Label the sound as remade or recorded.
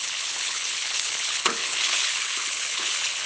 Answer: remade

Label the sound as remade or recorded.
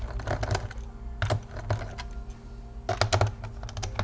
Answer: recorded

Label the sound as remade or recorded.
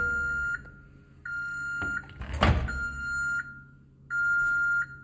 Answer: recorded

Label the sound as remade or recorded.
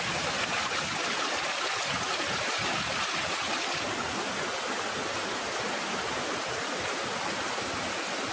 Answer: recorded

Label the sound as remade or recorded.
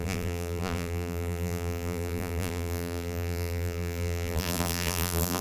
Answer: remade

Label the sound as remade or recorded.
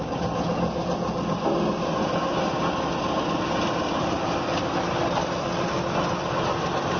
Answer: recorded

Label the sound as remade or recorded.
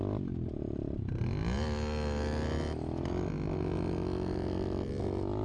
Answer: recorded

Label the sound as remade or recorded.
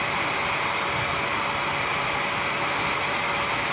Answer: recorded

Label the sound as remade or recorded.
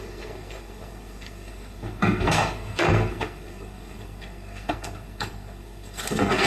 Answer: remade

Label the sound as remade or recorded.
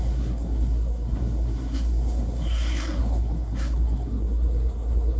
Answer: remade